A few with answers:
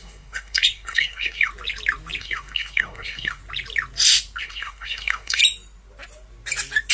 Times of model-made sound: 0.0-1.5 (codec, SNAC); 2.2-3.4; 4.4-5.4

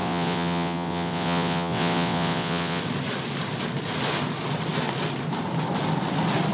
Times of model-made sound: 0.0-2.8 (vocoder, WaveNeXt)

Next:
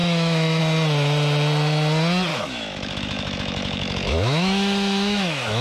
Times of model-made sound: 0.0-0.6 (autoencoder, DAC-VAE); 2.3-5.6

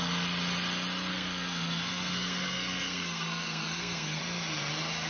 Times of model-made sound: 1.1-4.2 (codec, SNAC)